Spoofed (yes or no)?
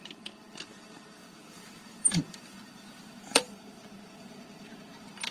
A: yes